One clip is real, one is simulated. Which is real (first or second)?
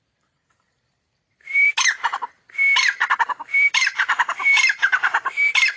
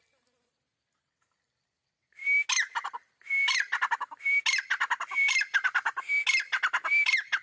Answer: second